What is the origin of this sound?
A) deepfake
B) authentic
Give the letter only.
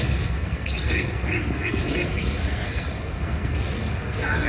A